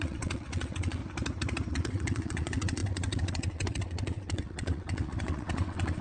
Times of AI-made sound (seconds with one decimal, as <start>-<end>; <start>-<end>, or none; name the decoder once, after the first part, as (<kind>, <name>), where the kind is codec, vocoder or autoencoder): 0.0-1.0 (vocoder, WaveNeXt); 1.7-6.0

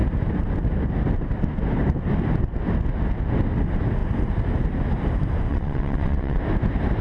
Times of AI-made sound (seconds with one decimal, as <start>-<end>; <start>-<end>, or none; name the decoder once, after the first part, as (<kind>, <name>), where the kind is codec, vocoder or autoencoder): 5.5-6.4 (vocoder, WaveNeXt)

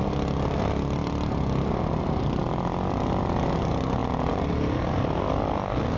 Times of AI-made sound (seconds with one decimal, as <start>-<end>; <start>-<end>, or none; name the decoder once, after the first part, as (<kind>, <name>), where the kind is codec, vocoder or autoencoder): none

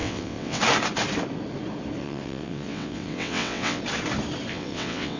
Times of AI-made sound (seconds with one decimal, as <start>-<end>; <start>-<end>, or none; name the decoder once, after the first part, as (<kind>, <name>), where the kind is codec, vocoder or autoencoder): 0.0-0.6 (vocoder, WaveNeXt); 2.0-3.8; 4.5-5.2

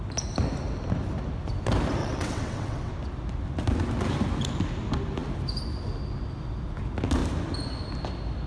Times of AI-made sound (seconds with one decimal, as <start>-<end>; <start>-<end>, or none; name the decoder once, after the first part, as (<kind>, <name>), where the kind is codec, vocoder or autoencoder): 2.0-2.9 (vocoder, WaveNeXt)

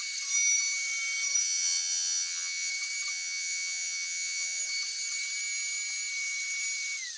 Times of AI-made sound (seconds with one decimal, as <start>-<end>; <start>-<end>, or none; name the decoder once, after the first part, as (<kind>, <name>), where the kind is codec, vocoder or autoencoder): 1.4-2.7 (vocoder, WaveNeXt); 3.1-4.6